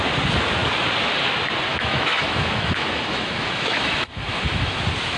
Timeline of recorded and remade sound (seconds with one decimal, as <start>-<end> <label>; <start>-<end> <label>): 0.0-1.7 recorded; 1.7-4.8 remade; 4.8-5.2 recorded